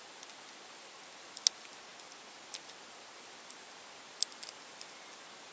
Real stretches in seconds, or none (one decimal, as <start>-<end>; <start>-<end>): 0.0-5.5